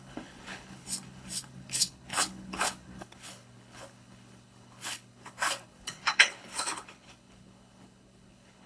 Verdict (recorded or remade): remade